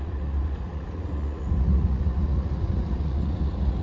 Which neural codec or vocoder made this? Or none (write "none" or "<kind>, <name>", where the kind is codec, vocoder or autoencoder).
vocoder, Vocos